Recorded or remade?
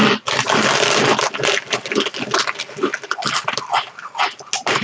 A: recorded